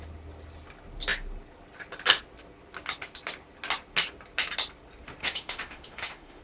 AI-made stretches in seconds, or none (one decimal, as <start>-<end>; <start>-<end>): 5.2-6.4